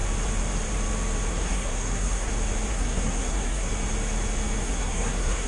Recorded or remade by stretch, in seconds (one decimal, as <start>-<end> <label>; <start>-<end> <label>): 0.0-1.3 recorded; 1.3-2.3 remade; 2.3-2.7 recorded; 2.7-3.7 remade; 3.7-4.6 recorded; 4.6-5.5 remade